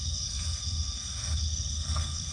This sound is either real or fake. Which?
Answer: fake